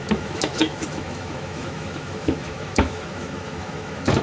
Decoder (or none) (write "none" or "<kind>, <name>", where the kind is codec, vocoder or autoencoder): autoencoder, DAC-VAE